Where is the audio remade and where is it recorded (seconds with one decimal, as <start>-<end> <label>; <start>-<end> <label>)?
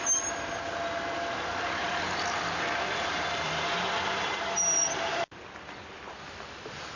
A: 0.0-1.8 recorded; 1.8-5.4 remade; 5.4-7.0 recorded